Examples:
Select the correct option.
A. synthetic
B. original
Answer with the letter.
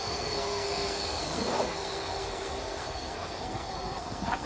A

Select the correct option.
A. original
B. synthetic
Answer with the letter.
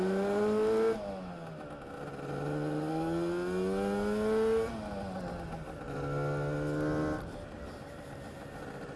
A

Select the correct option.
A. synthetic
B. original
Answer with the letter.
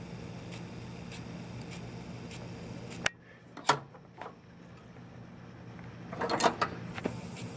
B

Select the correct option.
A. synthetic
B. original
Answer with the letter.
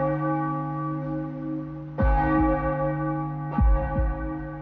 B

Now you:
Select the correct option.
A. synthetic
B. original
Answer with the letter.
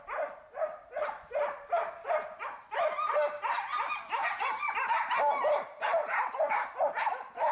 B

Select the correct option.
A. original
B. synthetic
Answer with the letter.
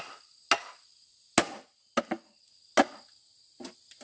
A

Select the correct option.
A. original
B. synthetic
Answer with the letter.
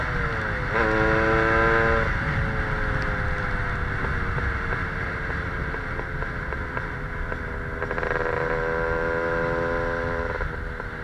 A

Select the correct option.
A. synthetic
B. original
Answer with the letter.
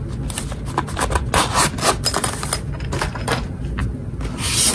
B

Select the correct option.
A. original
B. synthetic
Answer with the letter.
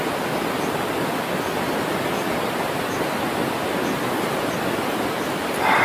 A